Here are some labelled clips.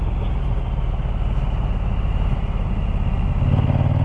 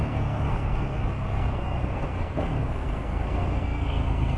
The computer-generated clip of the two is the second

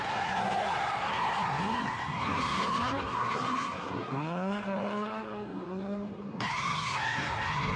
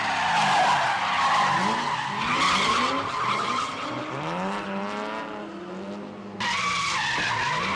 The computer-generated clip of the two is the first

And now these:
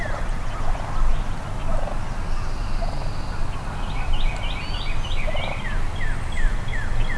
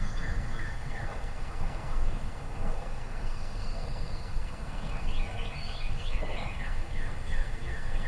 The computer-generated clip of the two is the second